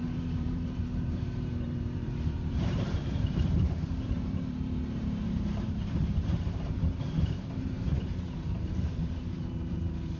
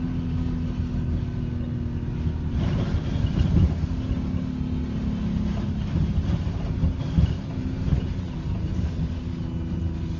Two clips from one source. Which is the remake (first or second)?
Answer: first